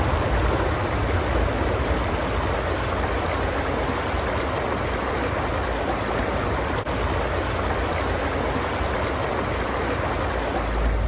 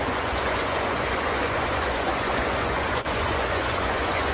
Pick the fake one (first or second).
second